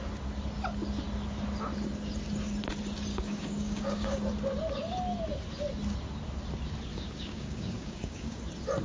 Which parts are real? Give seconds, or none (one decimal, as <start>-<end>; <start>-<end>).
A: 0.0-3.1; 4.3-6.9; 8.4-8.8